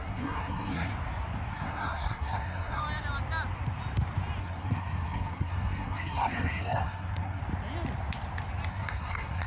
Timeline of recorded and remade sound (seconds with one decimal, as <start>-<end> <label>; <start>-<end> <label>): 0.0-0.9 remade; 0.9-1.5 recorded; 1.5-2.8 remade; 2.8-4.4 recorded; 4.4-7.4 remade; 7.4-8.7 recorded; 8.7-9.5 remade

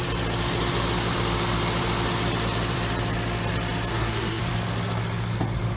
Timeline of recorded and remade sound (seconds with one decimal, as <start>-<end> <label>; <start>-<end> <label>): 0.0-3.9 recorded; 3.9-4.4 remade; 4.4-5.8 recorded

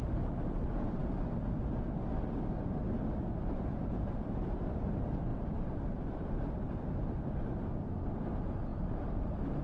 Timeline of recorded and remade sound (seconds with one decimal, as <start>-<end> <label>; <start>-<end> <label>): 0.0-5.3 recorded; 5.3-6.0 remade; 6.0-8.7 recorded; 8.7-9.6 remade